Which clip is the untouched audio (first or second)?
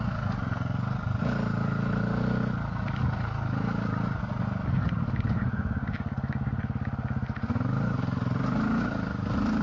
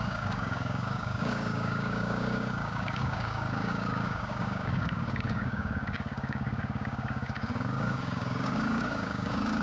first